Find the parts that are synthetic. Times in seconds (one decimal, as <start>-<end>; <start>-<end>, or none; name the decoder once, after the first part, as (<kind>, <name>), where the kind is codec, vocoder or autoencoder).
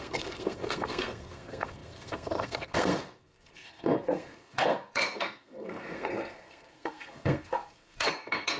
0.0-8.6 (codec, SNAC)